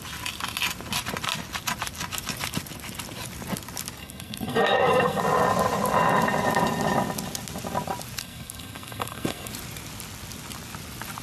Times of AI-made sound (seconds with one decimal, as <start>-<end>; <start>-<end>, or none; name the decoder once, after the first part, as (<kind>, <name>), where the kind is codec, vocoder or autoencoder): 4.0-5.2 (codec, SNAC); 8.2-9.5